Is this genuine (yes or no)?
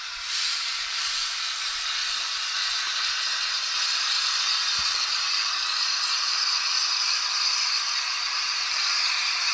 no